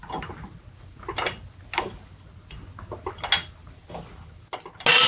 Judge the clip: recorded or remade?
recorded